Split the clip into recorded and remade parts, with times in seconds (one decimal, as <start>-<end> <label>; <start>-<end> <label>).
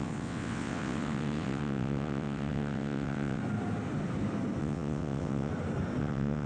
0.0-3.4 remade; 3.4-4.6 recorded; 4.6-5.5 remade; 5.5-6.0 recorded; 6.0-6.5 remade